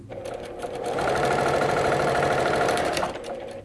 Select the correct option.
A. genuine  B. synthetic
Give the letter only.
B